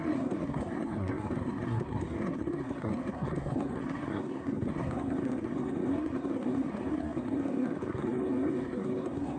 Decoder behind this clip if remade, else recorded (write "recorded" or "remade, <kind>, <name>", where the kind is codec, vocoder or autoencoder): remade, codec, SNAC